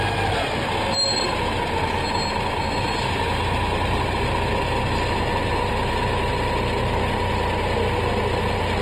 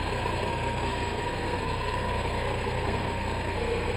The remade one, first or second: second